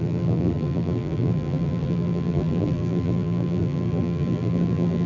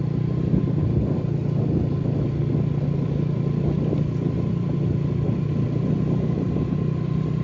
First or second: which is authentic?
second